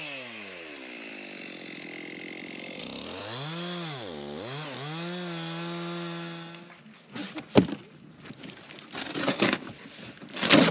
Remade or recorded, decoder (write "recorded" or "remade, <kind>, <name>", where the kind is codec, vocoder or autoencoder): recorded